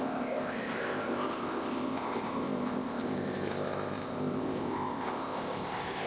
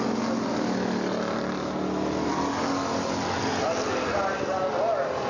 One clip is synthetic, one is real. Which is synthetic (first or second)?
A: first